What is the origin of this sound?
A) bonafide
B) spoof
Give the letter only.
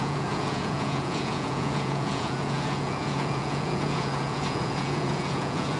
B